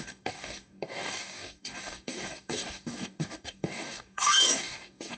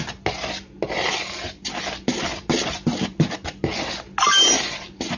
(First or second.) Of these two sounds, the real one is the second